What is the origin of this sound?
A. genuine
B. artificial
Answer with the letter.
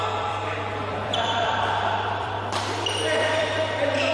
B